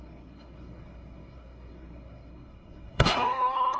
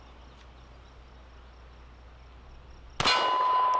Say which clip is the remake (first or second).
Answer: first